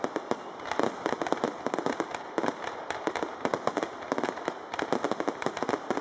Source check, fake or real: real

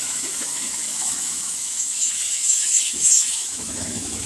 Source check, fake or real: fake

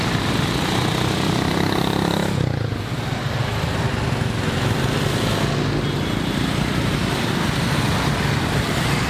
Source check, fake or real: real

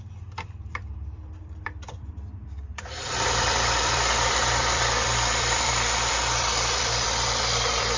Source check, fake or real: fake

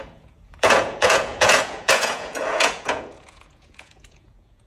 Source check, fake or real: fake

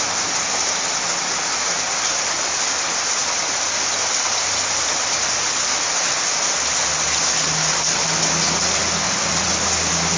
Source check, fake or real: real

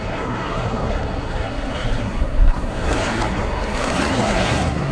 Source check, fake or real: fake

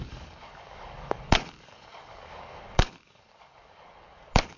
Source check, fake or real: fake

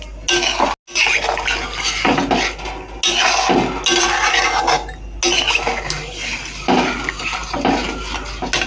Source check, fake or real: real